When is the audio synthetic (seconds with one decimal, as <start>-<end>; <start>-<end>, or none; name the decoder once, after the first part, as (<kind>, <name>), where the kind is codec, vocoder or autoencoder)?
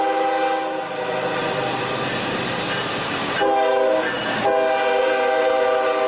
none